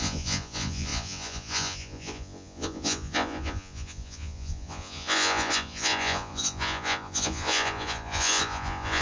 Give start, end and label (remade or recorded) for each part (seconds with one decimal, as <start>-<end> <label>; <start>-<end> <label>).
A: 0.0-9.0 remade